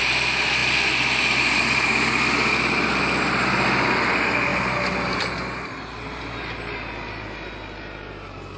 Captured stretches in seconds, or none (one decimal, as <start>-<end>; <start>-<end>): 0.0-8.6